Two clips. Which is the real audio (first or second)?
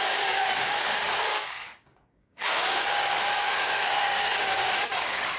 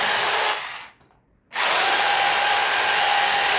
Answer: second